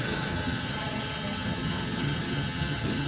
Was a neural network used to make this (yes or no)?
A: yes